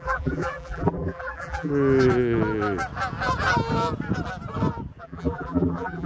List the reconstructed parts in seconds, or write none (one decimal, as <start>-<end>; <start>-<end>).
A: 0.0-1.7; 5.0-6.1